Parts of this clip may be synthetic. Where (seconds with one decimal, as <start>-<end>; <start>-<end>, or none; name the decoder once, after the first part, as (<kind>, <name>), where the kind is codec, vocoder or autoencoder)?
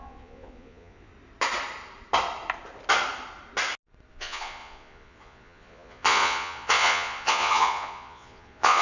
0.0-1.1 (vocoder, Vocos); 4.1-8.8